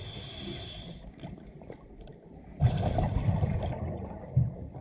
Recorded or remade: remade